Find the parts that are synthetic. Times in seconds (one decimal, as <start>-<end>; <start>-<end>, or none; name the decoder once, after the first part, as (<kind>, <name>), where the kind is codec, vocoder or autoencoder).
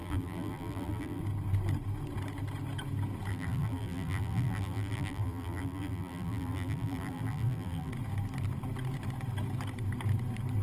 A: 0.0-1.2 (vocoder, BigVGAN v2); 3.3-7.9